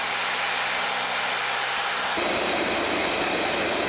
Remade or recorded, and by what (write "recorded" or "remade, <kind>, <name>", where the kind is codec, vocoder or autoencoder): recorded